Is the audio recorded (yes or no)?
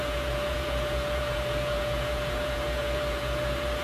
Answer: no